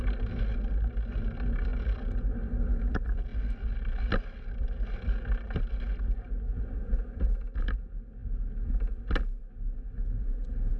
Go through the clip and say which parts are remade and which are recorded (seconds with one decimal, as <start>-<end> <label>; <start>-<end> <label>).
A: 0.0-1.7 recorded; 1.7-2.3 remade; 2.3-10.8 recorded